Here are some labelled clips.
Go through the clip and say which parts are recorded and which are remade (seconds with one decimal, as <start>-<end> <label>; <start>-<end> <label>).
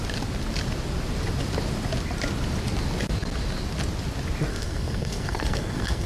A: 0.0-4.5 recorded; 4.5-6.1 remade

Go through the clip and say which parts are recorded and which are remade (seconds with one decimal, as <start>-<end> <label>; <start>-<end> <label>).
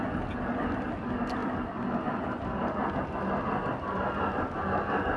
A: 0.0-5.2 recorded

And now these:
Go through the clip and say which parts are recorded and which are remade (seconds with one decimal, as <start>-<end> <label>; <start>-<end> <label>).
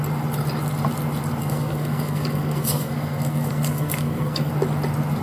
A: 0.0-1.4 recorded; 1.4-4.5 remade; 4.5-5.2 recorded